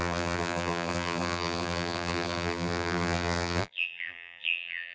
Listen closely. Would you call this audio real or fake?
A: fake